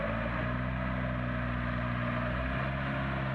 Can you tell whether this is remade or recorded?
recorded